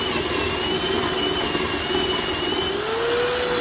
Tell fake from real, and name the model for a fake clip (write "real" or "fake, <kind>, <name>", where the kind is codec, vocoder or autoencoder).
real